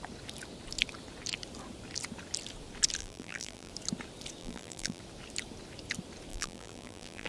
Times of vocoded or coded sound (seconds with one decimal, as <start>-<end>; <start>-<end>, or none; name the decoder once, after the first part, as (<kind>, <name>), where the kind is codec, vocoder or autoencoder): 3.0-3.7 (vocoder, BigVGAN v2); 4.4-5.0; 6.3-7.3